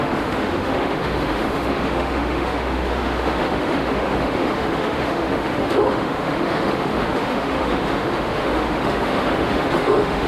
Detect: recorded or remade remade